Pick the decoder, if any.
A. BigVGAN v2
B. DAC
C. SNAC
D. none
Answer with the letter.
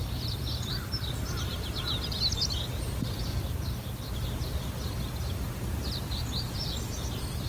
D